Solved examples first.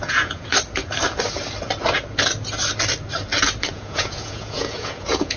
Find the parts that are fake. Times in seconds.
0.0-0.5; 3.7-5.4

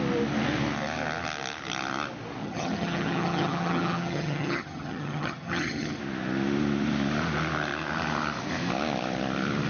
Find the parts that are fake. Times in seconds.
2.4-6.0

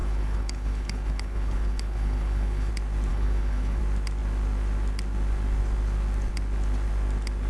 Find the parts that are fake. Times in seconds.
0.0-2.7; 3.1-3.8

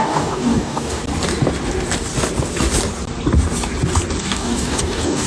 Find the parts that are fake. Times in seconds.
0.0-1.0; 4.2-5.3

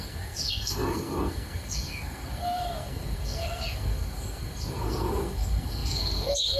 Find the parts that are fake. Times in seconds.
0.0-6.6